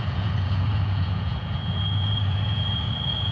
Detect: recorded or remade remade